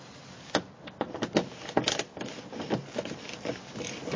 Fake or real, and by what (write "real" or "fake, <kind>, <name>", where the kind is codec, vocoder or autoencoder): real